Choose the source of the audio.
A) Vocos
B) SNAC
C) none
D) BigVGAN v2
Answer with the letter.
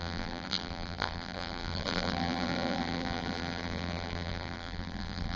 D